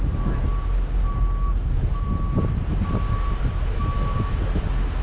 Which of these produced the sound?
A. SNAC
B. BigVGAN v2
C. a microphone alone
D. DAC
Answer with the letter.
C